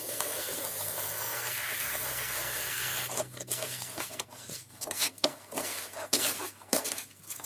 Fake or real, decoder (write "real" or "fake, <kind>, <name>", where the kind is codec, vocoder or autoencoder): fake, codec, SNAC